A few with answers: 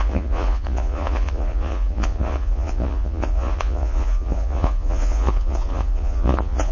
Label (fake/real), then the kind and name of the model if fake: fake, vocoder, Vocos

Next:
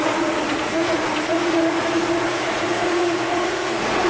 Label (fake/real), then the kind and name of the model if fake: fake, vocoder, Vocos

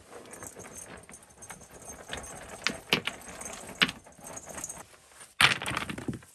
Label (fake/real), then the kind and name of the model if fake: real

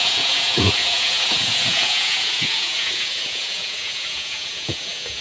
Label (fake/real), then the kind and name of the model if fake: fake, vocoder, Vocos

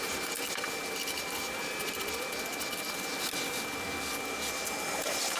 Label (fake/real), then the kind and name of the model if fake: real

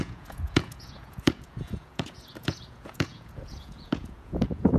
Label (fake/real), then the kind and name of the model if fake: fake, vocoder, Vocos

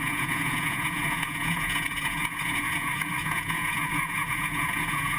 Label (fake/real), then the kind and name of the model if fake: fake, vocoder, Vocos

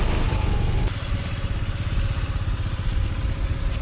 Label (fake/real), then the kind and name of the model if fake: real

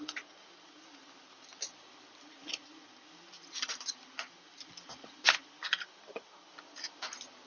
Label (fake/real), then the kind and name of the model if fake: real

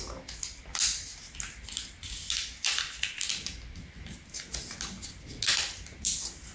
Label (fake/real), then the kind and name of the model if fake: real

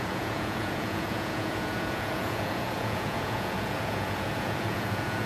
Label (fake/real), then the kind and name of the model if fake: fake, vocoder, Vocos